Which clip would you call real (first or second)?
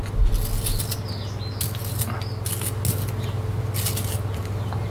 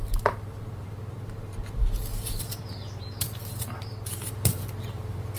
first